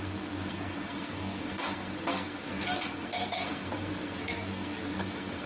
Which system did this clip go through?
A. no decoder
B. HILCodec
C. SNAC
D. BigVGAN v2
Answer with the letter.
C